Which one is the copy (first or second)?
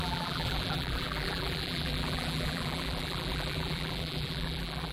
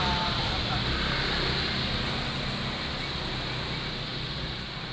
first